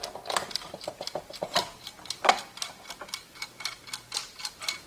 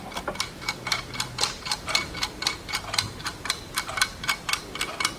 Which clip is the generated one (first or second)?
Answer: second